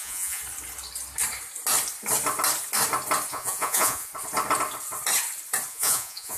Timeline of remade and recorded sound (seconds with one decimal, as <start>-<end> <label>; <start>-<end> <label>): 0.0-0.4 remade; 0.4-3.3 recorded; 3.3-4.1 remade; 4.1-5.7 recorded; 5.7-6.4 remade